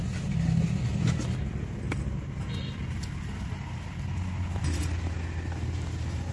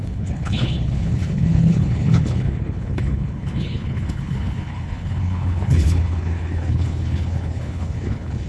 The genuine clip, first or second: first